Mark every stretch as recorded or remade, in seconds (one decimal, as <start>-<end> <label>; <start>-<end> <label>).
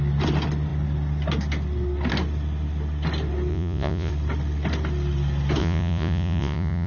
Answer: 0.0-3.5 recorded; 3.5-4.1 remade; 4.1-5.6 recorded; 5.6-6.9 remade